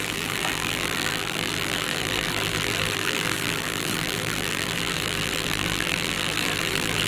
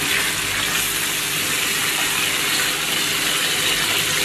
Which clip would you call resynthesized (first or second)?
first